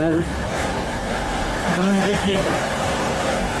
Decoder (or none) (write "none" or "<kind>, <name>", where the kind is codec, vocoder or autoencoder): codec, SNAC